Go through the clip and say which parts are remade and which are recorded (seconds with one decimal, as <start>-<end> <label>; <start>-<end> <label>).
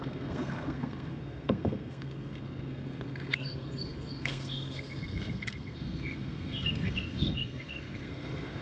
0.0-8.6 remade